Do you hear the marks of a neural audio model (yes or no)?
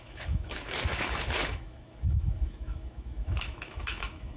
yes